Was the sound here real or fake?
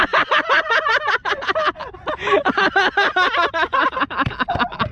real